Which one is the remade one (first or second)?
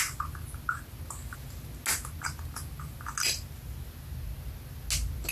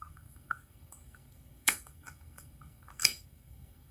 second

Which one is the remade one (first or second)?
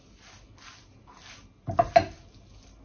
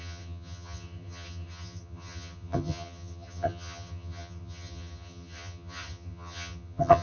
second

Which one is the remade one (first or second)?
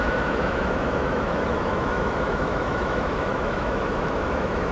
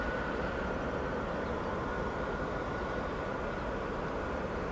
first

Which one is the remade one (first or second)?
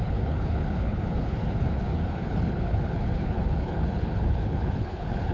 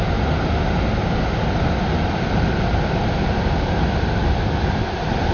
first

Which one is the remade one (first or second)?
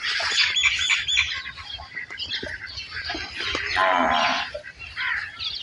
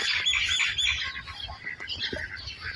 first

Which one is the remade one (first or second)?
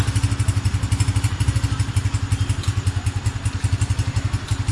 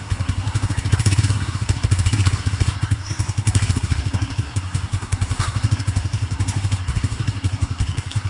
second